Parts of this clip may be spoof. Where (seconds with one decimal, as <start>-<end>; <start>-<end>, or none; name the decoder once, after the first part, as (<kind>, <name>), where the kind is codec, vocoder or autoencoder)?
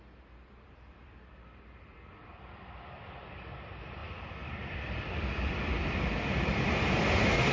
0.0-7.5 (vocoder, BigVGAN v2)